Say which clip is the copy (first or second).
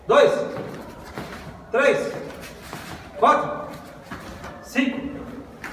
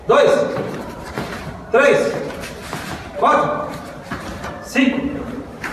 second